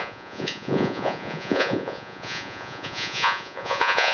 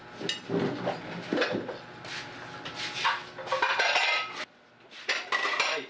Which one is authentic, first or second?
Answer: second